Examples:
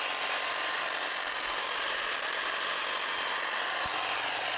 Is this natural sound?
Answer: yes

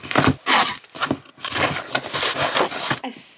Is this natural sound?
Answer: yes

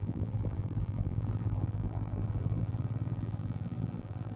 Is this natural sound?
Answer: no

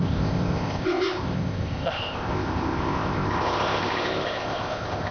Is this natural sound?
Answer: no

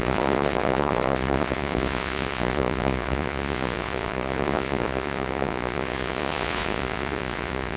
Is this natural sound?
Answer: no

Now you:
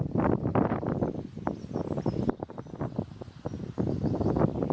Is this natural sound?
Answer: yes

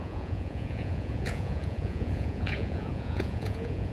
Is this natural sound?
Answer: no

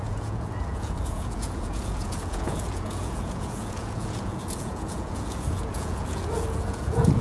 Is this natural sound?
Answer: no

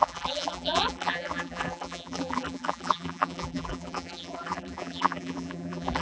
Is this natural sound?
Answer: no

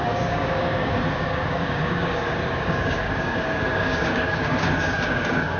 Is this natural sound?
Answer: no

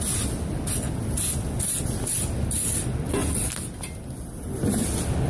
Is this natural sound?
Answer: yes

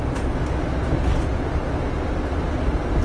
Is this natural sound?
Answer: yes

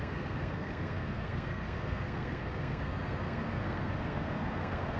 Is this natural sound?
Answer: no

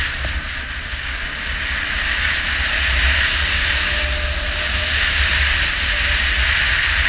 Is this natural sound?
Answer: yes